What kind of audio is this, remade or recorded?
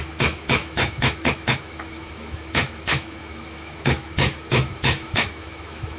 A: remade